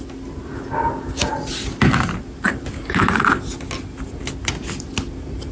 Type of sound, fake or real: real